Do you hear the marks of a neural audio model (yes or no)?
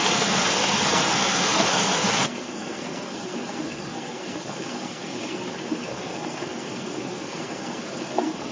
yes